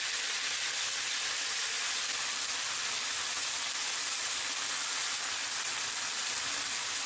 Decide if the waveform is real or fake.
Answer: real